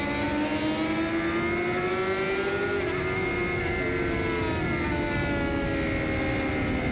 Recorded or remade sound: recorded